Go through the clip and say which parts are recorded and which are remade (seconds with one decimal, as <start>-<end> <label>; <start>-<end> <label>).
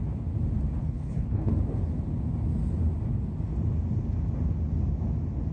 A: 0.0-0.8 recorded; 0.8-1.5 remade; 1.5-5.5 recorded